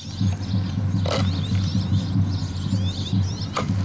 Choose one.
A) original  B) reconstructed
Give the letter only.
A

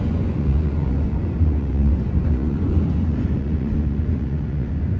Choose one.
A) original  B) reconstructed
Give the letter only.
B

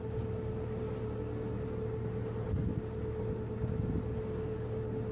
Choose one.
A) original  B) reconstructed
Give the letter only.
A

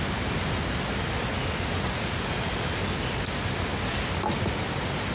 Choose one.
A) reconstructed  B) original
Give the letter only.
B